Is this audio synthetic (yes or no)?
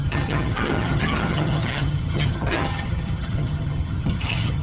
yes